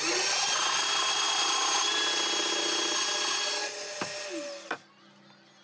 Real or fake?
real